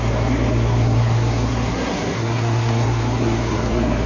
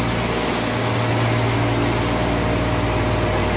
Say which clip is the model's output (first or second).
first